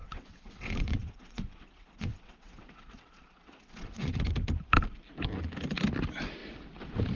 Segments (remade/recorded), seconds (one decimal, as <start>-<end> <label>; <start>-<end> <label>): 0.0-4.3 remade; 4.3-7.2 recorded